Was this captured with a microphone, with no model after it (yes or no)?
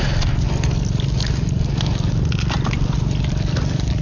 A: yes